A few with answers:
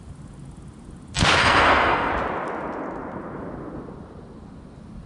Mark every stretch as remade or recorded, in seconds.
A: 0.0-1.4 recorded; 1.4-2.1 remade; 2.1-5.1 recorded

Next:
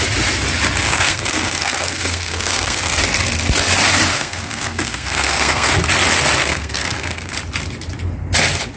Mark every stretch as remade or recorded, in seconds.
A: 0.0-0.8 recorded; 0.8-3.0 remade; 3.0-4.1 recorded; 4.1-5.7 remade; 5.7-6.4 recorded; 6.4-7.3 remade; 7.3-8.8 recorded

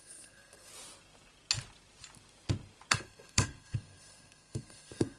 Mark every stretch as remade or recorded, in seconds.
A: 0.0-0.7 remade; 0.7-2.9 recorded; 2.9-5.2 remade